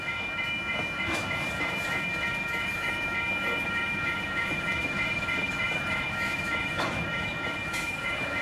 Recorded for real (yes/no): no